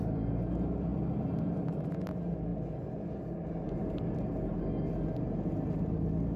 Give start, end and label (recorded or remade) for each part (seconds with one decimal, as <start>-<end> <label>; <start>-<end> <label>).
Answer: 0.0-6.4 recorded